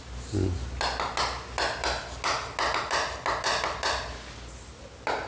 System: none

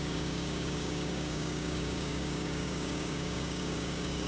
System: codec, DAC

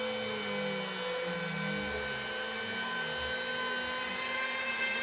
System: none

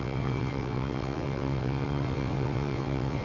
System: vocoder, WaveNeXt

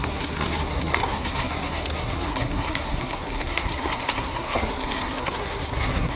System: codec, SNAC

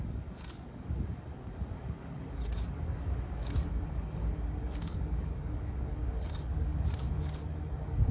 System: codec, DAC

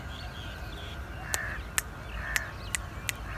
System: none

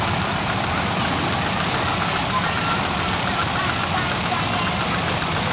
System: none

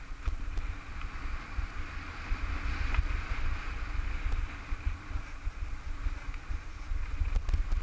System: none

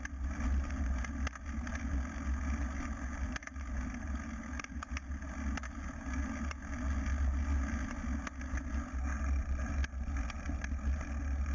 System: none